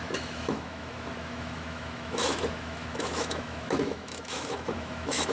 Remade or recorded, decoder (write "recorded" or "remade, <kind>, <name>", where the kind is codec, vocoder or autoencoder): remade, autoencoder, DAC-VAE